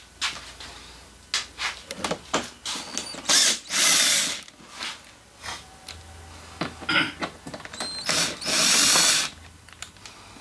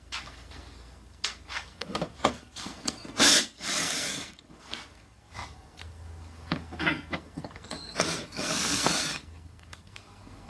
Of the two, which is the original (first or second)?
first